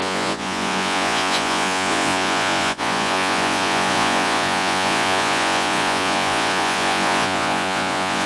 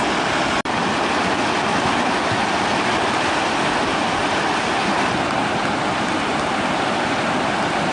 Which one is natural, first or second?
second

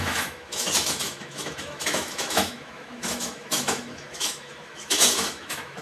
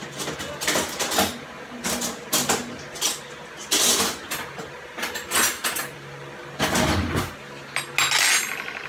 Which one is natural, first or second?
second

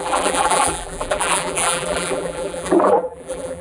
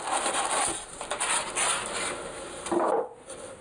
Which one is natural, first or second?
second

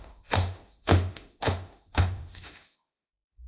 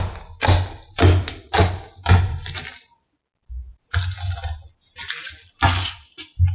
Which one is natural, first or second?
second